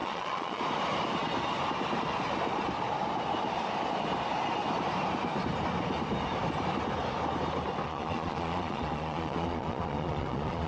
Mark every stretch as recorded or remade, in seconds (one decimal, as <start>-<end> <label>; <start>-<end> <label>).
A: 0.0-0.6 remade; 0.6-7.8 recorded; 7.8-10.7 remade